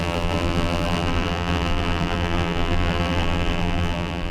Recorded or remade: remade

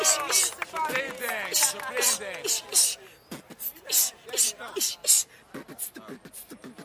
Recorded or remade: recorded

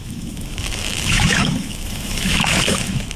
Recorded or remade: remade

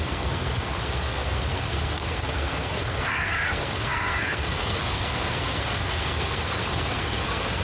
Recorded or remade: remade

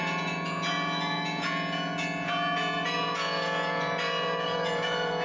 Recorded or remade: remade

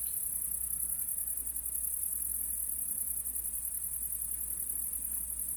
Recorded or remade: recorded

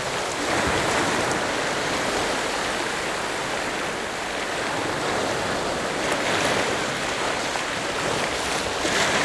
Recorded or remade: recorded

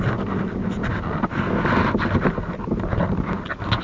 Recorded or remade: recorded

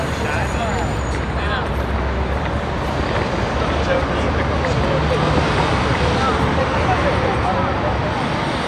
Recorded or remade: recorded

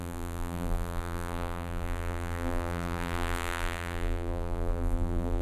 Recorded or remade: remade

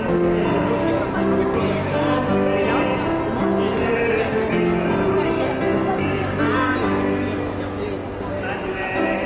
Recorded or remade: recorded